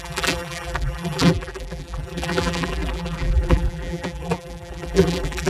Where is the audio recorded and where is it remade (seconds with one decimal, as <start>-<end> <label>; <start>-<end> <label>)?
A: 0.0-5.5 remade